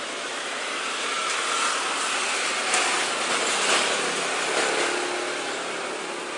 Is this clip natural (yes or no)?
yes